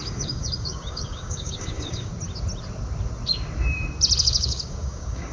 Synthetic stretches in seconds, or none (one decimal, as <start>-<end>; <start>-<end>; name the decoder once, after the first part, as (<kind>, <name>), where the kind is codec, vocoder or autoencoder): 0.0-2.1 (codec, DAC); 4.2-5.3